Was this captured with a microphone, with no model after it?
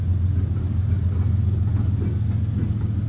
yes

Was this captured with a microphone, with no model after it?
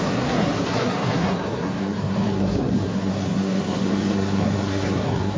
no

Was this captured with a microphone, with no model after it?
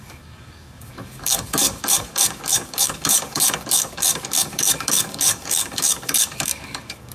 no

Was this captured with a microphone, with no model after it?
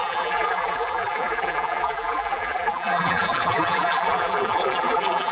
no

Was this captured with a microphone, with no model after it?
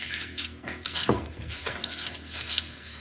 no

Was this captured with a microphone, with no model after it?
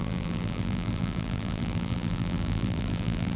no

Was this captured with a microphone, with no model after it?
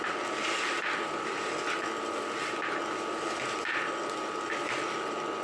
yes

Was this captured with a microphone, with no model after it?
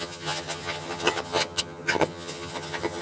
no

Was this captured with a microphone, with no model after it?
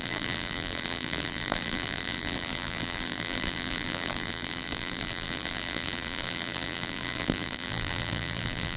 no